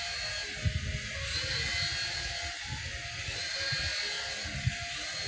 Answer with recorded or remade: recorded